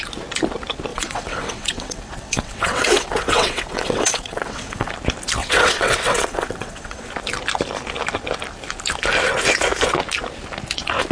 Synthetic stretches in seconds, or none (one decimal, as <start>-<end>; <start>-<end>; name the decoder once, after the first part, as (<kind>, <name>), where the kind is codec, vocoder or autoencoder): 0.9-4.9 (vocoder, WaveNeXt); 5.4-7.1